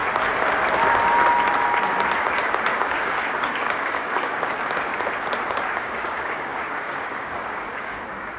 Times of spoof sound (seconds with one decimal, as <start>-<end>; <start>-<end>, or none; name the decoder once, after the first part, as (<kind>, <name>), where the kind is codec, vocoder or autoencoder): 2.7-4.9 (codec, DAC); 5.5-8.4